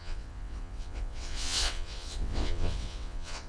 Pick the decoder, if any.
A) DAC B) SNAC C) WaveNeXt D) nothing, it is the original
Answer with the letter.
C